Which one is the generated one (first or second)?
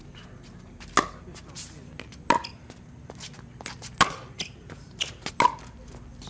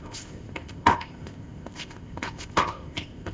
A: second